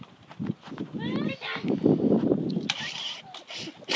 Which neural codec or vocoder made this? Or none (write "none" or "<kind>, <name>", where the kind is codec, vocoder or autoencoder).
none